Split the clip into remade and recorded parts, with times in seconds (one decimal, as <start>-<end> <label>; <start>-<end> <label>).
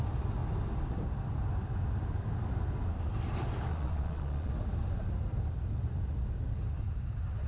0.0-3.7 recorded; 3.7-4.5 remade; 4.5-7.5 recorded